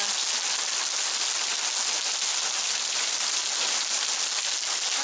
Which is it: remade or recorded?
recorded